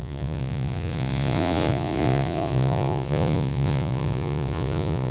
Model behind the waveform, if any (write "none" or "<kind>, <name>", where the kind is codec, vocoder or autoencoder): vocoder, Vocos